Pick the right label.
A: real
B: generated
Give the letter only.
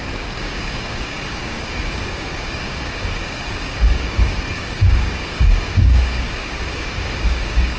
B